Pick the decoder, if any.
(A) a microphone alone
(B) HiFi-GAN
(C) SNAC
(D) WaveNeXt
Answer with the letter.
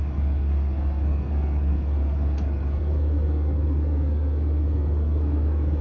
C